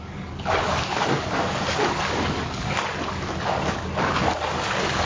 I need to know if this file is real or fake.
fake